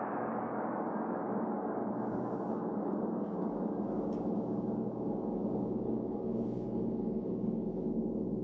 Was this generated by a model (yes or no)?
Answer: yes